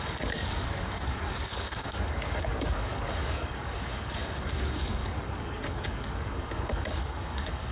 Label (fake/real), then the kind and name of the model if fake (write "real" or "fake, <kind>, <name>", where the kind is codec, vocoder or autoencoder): fake, codec, DAC